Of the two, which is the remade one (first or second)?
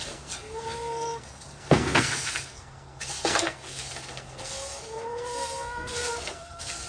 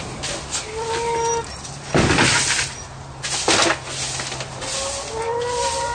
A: first